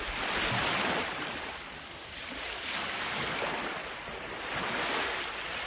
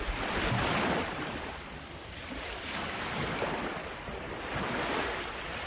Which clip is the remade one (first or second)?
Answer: second